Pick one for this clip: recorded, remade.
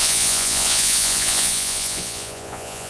remade